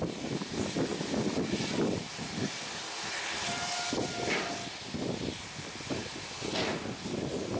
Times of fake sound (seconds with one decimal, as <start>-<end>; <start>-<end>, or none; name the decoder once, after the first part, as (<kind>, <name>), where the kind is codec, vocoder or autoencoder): none

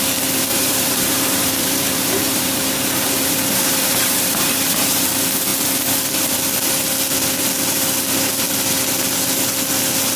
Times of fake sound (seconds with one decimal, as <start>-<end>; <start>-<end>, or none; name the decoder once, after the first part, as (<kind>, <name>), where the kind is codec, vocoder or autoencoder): 0.5-5.1 (vocoder, BigVGAN v2)

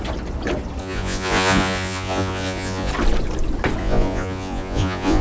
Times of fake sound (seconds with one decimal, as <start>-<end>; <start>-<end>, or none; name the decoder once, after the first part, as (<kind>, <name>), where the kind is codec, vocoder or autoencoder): 0.8-2.9 (vocoder, Vocos); 3.8-5.2

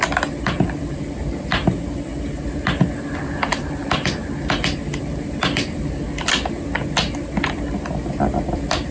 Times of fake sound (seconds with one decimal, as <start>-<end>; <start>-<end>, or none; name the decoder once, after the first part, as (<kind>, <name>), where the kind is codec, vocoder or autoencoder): none

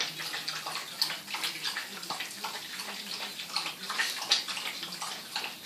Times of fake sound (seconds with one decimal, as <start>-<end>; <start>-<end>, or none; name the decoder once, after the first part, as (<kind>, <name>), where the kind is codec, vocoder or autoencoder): none

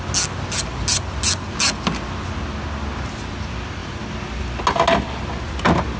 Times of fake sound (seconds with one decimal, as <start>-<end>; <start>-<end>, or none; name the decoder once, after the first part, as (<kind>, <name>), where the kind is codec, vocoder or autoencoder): none